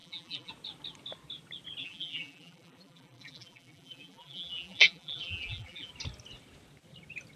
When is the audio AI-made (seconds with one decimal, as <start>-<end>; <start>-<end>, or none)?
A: 0.0-0.5; 1.8-5.9